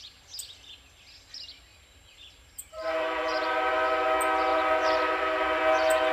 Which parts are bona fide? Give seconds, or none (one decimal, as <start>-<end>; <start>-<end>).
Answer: 0.0-1.7; 3.7-4.5; 5.6-6.1